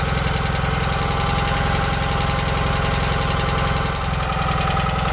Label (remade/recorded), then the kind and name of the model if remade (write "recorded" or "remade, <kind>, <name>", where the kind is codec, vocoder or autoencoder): recorded